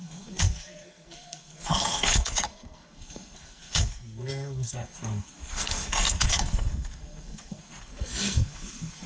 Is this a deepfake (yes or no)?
yes